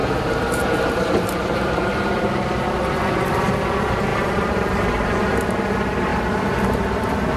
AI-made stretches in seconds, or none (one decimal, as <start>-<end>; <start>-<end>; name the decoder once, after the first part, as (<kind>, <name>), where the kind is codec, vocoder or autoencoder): 0.0-2.2 (vocoder, BigVGAN v2); 4.1-4.7